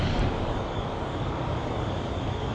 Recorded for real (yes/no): no